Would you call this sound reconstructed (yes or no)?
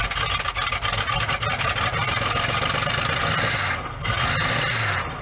no